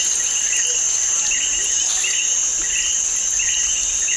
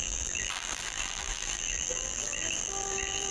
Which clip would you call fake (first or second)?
second